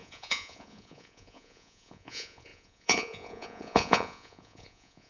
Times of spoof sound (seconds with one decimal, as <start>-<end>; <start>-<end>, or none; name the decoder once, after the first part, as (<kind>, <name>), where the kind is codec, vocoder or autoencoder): 0.0-5.1 (vocoder, Vocos)